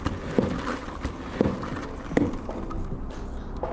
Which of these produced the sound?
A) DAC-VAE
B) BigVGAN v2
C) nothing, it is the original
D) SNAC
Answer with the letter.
C